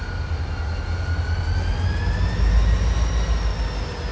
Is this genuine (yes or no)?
yes